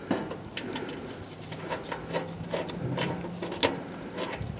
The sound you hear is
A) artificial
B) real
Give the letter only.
B